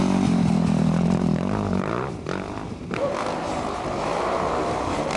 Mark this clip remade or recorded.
remade